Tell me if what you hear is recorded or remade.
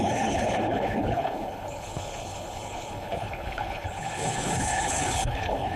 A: remade